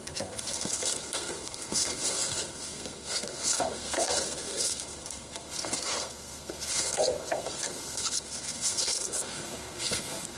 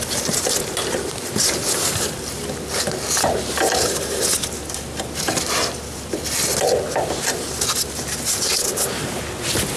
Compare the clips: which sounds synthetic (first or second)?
first